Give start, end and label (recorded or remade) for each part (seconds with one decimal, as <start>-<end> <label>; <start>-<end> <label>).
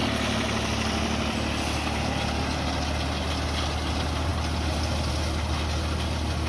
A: 0.0-6.5 recorded